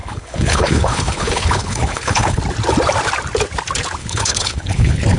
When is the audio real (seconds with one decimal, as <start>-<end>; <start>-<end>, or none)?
2.4-4.0